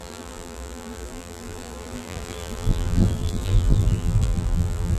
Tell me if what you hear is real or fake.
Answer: fake